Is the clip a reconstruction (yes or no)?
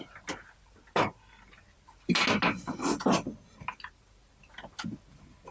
no